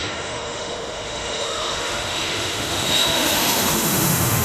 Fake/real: fake